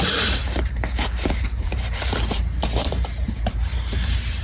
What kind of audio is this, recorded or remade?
remade